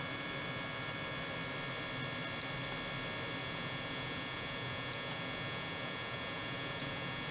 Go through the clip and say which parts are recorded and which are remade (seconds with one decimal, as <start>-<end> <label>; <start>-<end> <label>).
0.0-3.4 recorded; 3.4-7.3 remade